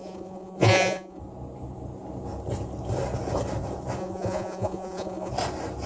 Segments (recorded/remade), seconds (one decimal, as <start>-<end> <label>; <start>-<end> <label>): 0.0-1.2 remade; 1.2-4.0 recorded; 4.0-5.3 remade; 5.3-5.9 recorded